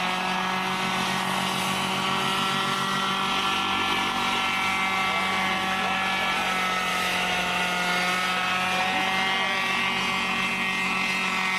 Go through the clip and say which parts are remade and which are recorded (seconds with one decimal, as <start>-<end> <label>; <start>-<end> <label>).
0.0-6.9 recorded; 6.9-7.6 remade; 7.6-11.6 recorded